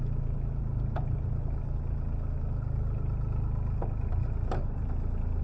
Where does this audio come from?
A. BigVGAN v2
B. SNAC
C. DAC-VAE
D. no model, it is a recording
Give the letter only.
D